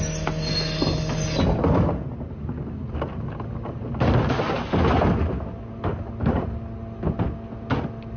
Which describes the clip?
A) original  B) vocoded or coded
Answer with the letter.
A